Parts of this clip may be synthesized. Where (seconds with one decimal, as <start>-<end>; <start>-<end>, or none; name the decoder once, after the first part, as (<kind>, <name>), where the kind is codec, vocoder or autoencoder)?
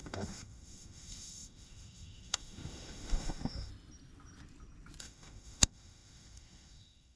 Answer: 0.0-3.7 (autoencoder, DAC-VAE); 5.0-7.2